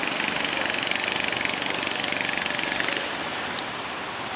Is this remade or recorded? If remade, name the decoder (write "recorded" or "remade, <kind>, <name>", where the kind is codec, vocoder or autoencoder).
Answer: recorded